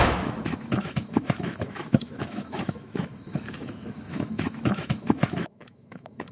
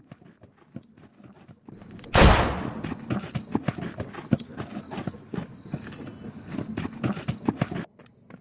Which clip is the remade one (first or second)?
first